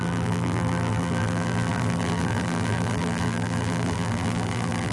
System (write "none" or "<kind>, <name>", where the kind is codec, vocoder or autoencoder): vocoder, BigVGAN v2